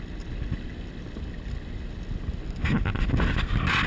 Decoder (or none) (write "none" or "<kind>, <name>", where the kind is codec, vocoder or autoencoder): none